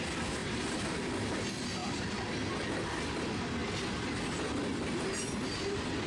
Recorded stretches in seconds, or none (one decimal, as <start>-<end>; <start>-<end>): 0.0-6.1

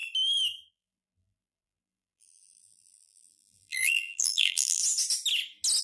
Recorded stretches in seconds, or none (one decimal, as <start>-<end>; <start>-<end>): 0.0-0.7; 4.8-5.8